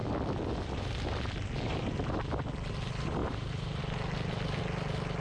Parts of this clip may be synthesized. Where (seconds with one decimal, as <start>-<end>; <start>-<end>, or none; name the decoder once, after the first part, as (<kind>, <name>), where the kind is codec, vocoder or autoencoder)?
3.2-3.8 (vocoder, BigVGAN v2)